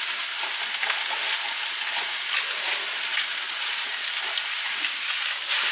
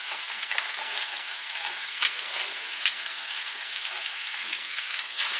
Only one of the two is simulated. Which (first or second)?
second